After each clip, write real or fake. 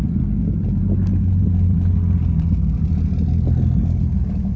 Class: real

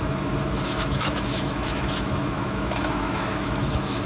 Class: fake